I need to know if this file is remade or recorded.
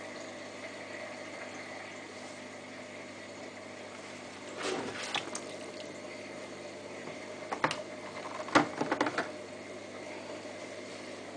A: recorded